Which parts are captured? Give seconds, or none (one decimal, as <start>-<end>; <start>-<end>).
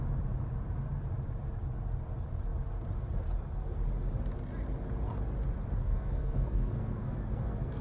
0.0-5.8